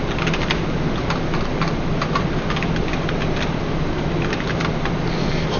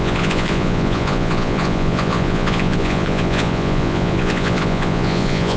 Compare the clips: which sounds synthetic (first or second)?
second